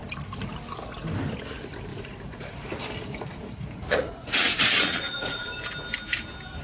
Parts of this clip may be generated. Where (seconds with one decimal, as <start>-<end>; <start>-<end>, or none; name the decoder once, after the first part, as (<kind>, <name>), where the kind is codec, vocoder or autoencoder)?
1.9-2.5 (vocoder, Vocos); 3.3-5.5